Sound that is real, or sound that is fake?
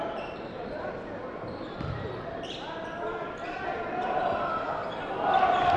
fake